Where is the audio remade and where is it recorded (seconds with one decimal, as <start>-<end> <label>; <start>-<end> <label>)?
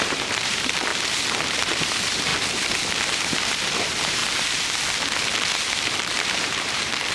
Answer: 0.0-0.9 remade; 0.9-1.5 recorded; 1.5-2.3 remade; 2.3-3.1 recorded; 3.1-4.2 remade; 4.2-6.0 recorded; 6.0-7.1 remade